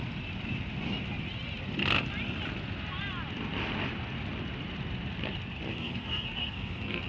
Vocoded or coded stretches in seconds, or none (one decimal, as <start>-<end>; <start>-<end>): 5.7-7.1